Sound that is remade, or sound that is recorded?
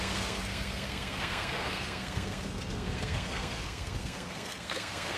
remade